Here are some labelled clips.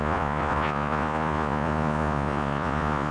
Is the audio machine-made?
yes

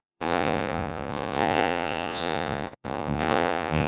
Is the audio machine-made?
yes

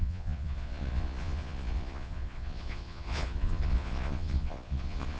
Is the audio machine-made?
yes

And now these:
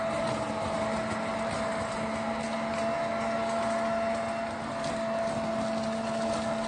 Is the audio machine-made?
no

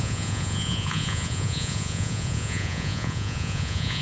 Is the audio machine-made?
yes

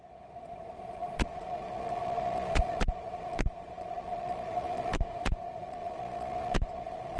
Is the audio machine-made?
yes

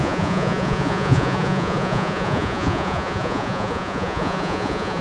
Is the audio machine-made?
yes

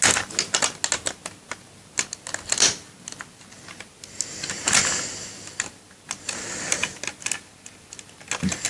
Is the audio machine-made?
no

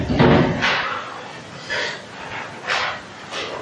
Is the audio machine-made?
no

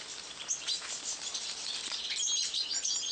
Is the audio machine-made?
no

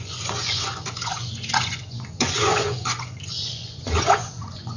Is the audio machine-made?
yes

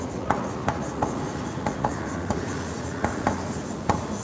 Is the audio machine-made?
yes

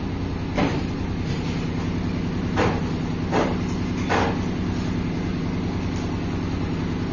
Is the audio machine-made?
no